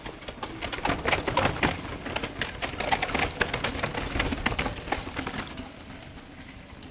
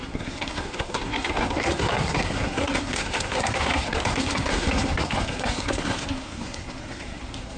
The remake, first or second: second